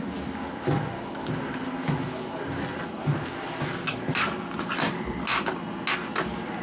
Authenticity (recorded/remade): recorded